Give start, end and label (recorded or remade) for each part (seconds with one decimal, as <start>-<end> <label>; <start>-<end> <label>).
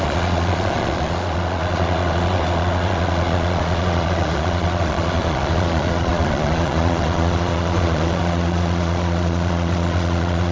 0.0-10.5 remade